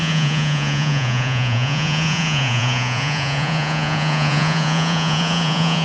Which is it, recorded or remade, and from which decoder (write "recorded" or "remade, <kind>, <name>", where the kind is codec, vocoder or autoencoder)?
remade, vocoder, Vocos